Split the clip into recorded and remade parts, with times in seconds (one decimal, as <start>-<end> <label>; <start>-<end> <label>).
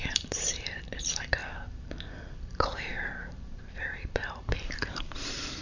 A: 0.0-1.4 remade; 1.4-2.2 recorded; 2.2-5.6 remade